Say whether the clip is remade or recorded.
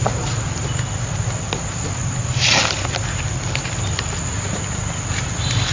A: recorded